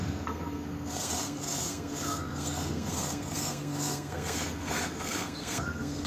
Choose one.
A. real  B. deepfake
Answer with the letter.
B